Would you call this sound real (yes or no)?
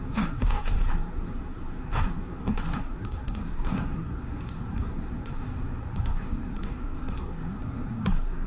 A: no